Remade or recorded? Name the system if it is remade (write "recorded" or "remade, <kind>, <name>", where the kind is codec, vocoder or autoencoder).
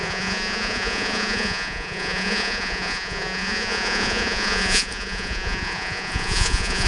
remade, vocoder, Vocos